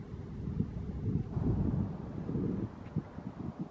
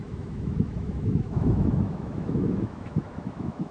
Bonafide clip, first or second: first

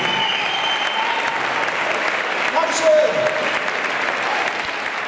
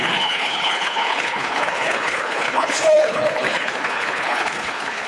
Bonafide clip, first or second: first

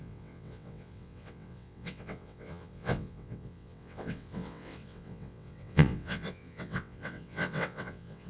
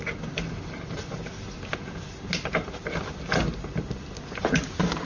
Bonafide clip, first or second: second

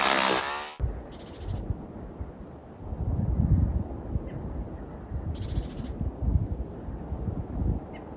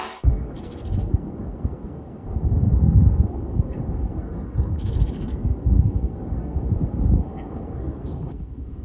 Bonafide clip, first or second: first